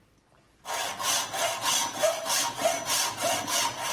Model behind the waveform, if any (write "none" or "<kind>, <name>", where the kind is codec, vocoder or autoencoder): none